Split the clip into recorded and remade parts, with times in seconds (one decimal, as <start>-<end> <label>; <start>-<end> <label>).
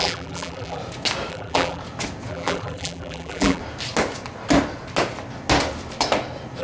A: 0.0-0.8 remade; 0.8-1.3 recorded; 1.3-1.8 remade; 1.8-2.3 recorded; 2.3-3.6 remade; 3.6-6.6 recorded